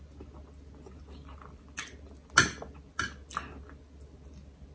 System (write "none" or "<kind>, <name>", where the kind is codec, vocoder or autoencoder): none